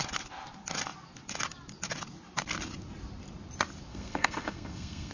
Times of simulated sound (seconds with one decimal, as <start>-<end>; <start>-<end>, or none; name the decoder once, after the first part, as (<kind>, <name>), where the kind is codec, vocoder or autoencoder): 3.9-5.1 (codec, SNAC)